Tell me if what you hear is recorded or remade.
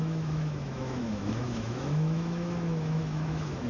remade